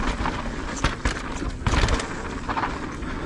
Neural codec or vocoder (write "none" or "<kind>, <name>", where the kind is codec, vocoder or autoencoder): none